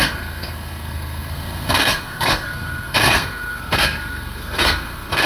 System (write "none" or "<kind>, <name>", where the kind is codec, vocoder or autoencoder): codec, SNAC